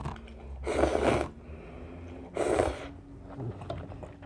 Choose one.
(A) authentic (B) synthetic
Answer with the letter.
A